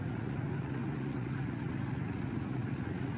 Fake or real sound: fake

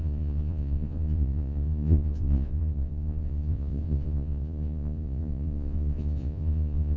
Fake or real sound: fake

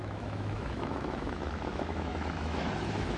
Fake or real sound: fake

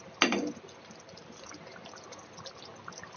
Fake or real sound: real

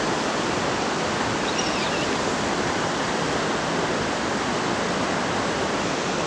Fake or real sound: real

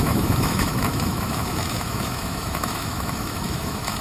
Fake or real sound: fake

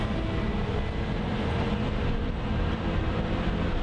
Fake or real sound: real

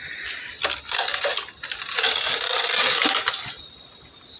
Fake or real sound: real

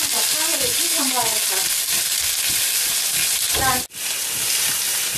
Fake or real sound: real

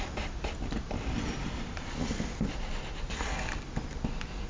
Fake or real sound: real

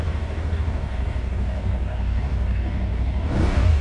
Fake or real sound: fake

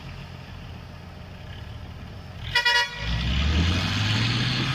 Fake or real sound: real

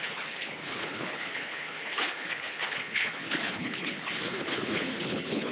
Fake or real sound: fake